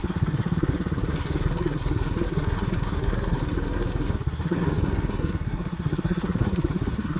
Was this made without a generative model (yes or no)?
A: no